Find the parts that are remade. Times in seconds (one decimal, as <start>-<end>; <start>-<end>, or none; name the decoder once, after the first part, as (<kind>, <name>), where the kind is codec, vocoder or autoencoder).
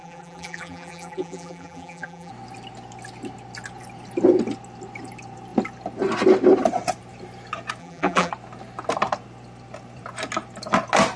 0.0-2.3 (vocoder, BigVGAN v2); 7.8-8.3